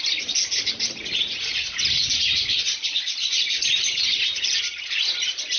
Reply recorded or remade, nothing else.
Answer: recorded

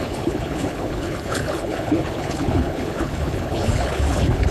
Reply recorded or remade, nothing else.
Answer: remade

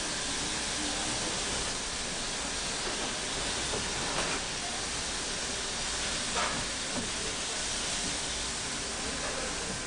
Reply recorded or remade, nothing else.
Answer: recorded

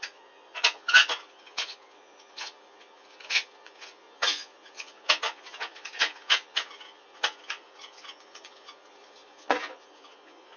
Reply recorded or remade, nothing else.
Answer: remade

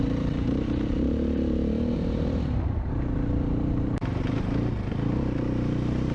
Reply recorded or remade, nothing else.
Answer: remade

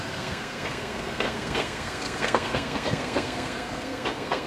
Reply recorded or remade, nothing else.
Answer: remade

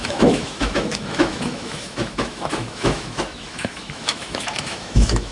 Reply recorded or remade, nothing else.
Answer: remade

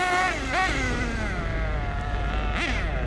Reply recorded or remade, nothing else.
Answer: recorded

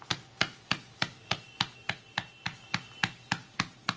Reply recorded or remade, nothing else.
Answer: recorded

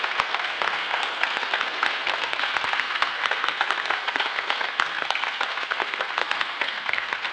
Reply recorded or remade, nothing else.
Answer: remade